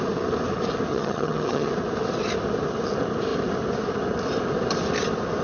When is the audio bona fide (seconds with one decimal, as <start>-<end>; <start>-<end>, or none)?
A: 0.0-0.9; 1.7-5.4